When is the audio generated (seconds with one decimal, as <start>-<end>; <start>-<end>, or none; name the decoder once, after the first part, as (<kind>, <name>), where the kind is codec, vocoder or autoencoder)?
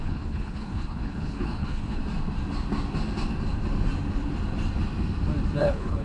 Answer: 0.0-2.0 (codec, HILCodec); 5.6-6.0